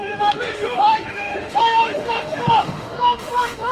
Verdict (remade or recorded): remade